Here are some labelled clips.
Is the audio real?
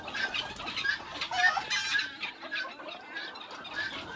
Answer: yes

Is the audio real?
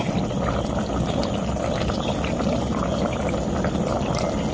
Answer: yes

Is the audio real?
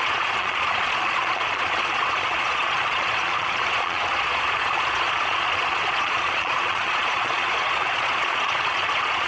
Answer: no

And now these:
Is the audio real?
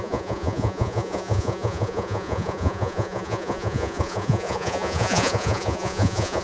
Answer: no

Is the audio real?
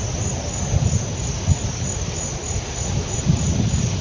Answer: yes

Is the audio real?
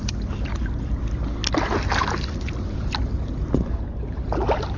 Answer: yes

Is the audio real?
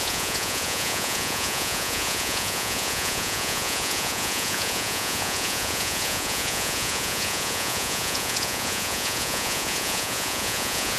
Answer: no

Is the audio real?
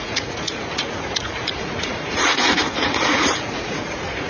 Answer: no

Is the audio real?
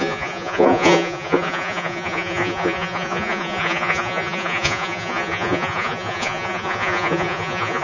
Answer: no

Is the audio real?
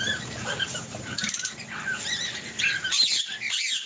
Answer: yes